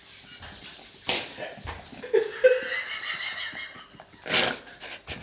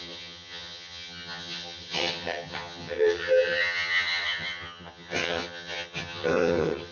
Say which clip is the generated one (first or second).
second